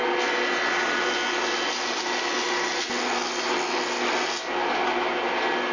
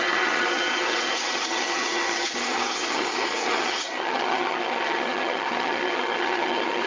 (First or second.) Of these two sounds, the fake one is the second